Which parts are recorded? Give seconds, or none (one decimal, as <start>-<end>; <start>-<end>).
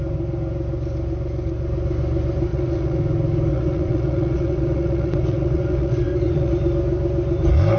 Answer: 0.0-2.5; 3.0-3.5; 6.5-7.8